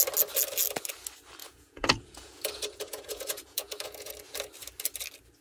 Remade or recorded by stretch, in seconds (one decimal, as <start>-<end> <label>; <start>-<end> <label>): 0.0-1.4 recorded; 1.4-4.1 remade; 4.1-5.4 recorded